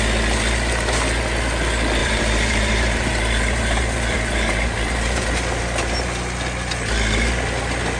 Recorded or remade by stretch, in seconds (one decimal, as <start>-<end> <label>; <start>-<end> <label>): 0.0-2.0 recorded; 2.0-5.6 remade; 5.6-8.0 recorded